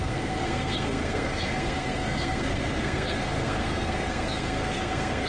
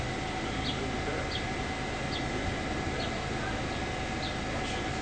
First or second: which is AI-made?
first